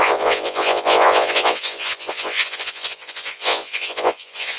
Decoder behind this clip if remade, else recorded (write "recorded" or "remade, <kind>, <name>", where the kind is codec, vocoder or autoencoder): remade, vocoder, Vocos